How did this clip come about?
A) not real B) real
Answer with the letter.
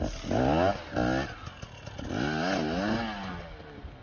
B